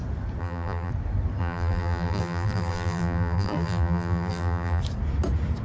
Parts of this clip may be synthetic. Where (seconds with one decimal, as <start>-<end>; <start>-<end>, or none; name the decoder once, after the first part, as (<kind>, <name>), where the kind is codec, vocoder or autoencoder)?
0.4-0.9 (vocoder, BigVGAN v2); 1.4-4.8